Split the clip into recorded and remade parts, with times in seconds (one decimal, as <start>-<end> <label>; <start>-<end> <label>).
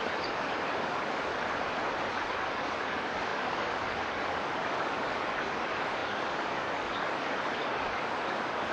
0.0-1.3 remade; 1.3-2.1 recorded; 2.1-8.7 remade